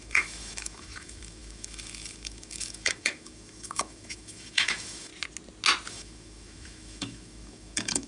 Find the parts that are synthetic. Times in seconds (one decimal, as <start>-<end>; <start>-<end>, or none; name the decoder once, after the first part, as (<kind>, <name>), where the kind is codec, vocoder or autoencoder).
0.0-5.1 (autoencoder, DAC-VAE); 5.9-8.1